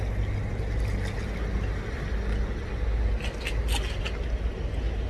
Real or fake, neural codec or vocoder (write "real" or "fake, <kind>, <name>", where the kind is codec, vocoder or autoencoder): real